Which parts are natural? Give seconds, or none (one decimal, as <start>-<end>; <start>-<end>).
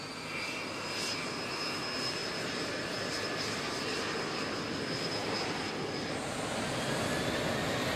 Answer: 0.0-2.2; 3.6-5.2; 5.7-8.0